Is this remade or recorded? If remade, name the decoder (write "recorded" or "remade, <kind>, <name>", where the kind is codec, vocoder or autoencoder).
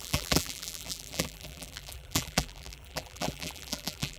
remade, vocoder, BigVGAN v2